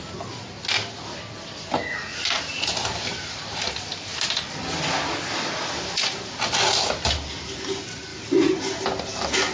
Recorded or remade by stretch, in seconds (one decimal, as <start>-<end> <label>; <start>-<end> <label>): 0.0-2.1 recorded; 2.1-6.6 remade; 6.6-8.1 recorded; 8.1-8.6 remade; 8.6-9.5 recorded